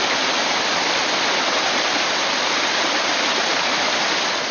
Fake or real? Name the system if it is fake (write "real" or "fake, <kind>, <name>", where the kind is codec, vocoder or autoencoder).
fake, vocoder, BigVGAN v2